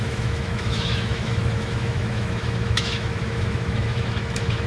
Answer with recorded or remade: remade